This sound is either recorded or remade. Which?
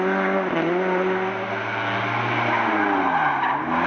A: recorded